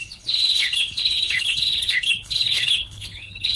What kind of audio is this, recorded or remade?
remade